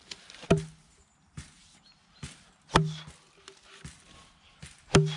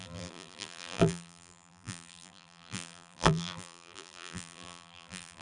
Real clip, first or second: first